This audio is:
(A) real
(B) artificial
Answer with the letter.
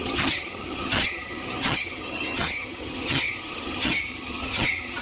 B